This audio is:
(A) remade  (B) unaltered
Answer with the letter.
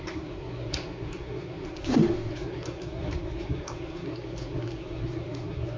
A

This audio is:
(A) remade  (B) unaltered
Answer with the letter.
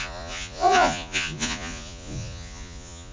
A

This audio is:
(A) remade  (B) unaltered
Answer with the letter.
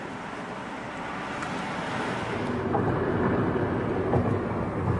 B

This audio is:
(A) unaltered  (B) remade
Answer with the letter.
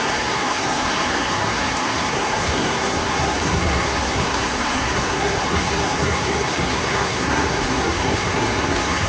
B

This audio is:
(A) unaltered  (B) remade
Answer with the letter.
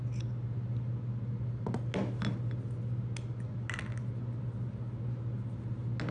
A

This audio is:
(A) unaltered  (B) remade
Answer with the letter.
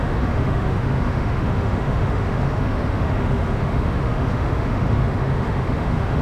B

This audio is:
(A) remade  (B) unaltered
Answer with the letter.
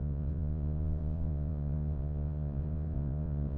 A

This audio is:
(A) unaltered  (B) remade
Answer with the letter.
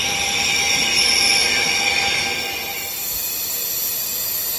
A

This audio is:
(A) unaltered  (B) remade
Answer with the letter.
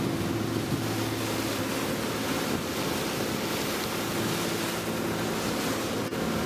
A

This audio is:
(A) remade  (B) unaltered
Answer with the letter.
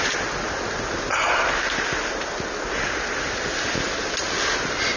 B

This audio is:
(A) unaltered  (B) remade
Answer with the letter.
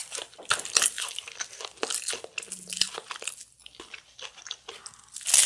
A